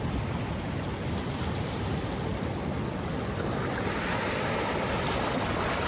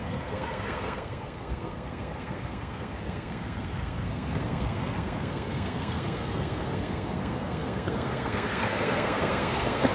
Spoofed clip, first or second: second